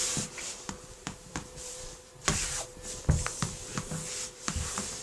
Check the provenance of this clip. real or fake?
fake